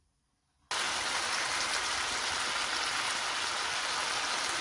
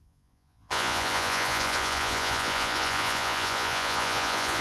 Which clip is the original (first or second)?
first